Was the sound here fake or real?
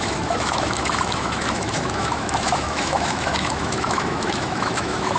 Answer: fake